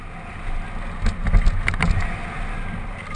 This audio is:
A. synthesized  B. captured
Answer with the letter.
B